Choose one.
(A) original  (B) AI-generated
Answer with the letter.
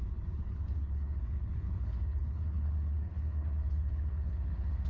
B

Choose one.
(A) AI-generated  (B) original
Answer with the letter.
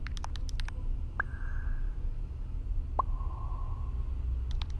B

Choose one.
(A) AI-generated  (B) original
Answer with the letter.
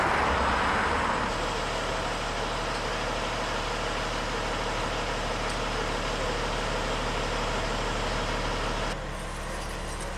B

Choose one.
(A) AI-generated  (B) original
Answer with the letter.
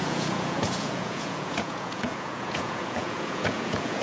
A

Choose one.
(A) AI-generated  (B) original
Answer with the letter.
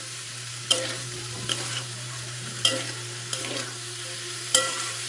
A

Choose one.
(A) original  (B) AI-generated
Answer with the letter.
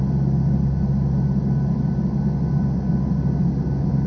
A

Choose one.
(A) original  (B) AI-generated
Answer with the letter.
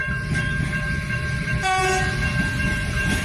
B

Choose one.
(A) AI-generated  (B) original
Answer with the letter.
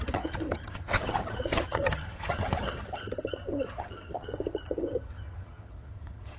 A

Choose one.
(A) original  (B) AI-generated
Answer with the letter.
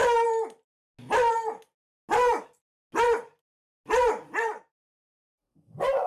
A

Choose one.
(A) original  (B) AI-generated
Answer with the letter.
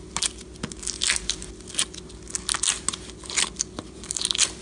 A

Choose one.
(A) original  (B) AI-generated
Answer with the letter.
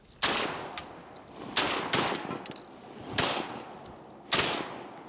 A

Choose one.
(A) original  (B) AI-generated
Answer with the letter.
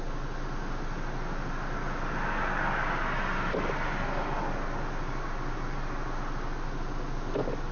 A